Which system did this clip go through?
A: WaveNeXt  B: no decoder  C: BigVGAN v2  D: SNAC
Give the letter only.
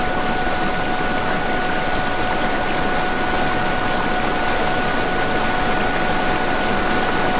B